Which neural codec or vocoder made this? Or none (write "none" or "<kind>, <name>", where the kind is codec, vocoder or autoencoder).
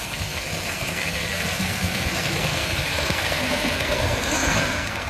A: codec, SNAC